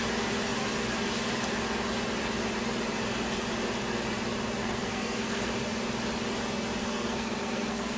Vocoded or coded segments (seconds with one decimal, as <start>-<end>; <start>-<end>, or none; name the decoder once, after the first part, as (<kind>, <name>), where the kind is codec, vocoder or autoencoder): 4.6-5.5 (codec, SNAC); 6.8-8.0